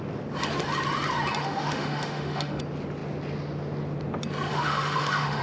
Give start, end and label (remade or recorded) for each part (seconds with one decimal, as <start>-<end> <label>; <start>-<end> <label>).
0.0-1.4 recorded; 1.4-2.6 remade; 2.6-4.5 recorded; 4.5-5.4 remade